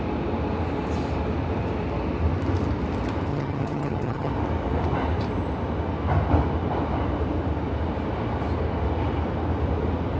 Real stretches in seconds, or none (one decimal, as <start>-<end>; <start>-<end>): 0.0-3.3; 4.3-10.2

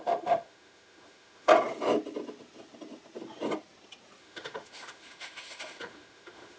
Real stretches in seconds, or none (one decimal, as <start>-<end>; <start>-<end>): 1.5-4.2

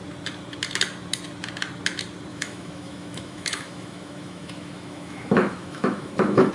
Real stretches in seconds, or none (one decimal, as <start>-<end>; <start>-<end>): 0.0-2.3

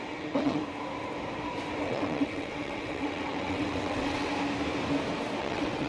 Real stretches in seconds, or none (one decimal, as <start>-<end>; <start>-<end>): 0.6-1.8; 4.3-5.4

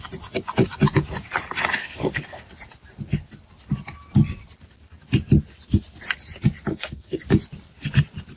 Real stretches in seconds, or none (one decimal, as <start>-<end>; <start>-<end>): 0.0-1.8; 2.4-6.7; 7.2-8.4

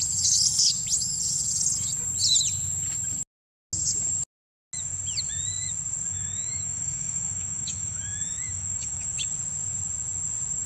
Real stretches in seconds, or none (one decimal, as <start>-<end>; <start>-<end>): 0.0-6.1; 9.3-10.7